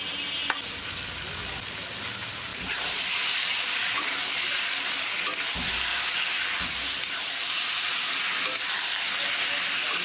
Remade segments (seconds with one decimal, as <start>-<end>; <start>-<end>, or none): 2.5-4.3